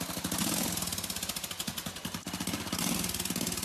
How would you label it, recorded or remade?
recorded